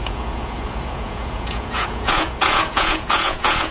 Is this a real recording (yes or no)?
no